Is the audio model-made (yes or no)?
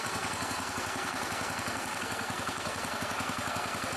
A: yes